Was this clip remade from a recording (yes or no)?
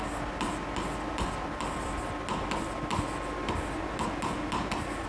no